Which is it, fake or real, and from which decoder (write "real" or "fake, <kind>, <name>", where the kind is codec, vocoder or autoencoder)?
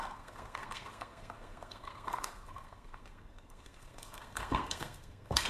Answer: fake, codec, SNAC